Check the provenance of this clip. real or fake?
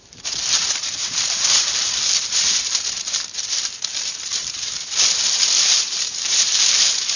fake